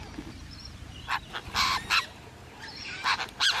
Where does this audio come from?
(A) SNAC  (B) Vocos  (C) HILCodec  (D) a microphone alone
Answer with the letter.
D